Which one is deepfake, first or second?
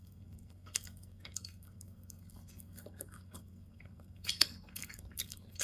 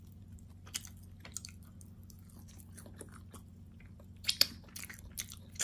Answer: first